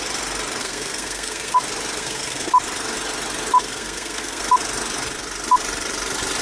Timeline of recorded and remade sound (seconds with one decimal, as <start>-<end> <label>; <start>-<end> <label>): 0.0-0.6 recorded; 0.6-1.6 remade; 1.6-2.0 recorded; 2.0-2.5 remade; 2.5-3.6 recorded; 3.6-4.4 remade; 4.4-6.4 recorded